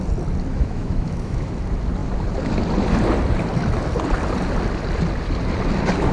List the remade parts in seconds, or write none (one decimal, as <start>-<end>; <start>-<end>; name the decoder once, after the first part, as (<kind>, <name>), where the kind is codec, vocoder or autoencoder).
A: 0.5-1.5 (autoencoder, DAC-VAE)

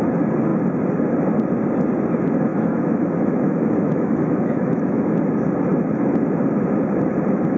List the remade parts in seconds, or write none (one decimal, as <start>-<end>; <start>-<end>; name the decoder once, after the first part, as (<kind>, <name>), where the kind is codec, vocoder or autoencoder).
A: 2.5-5.2 (autoencoder, DAC-VAE)

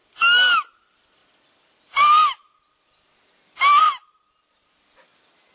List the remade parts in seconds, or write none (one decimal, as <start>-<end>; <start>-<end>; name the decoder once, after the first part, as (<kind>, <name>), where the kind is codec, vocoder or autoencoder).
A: none

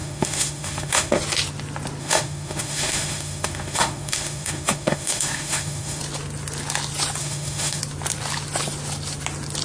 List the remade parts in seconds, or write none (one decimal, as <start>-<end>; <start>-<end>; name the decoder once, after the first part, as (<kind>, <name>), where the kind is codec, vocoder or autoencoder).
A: 0.0-1.2 (autoencoder, DAC-VAE); 2.0-6.0; 7.2-7.8